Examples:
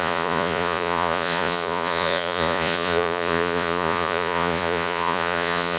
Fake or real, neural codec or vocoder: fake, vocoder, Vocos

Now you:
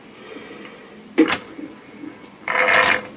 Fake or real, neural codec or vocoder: real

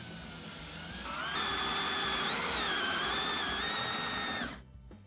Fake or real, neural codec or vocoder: real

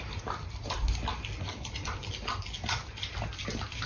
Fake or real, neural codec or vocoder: real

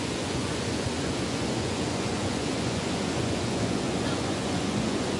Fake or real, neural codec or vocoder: fake, vocoder, Vocos